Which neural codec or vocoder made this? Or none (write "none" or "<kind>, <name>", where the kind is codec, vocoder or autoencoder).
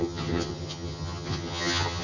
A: vocoder, HiFi-GAN